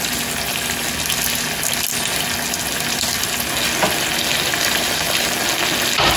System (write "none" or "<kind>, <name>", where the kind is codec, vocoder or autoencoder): none